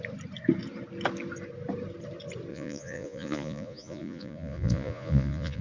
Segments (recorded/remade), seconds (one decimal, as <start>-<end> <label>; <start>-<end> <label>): 0.0-2.5 recorded; 2.5-5.6 remade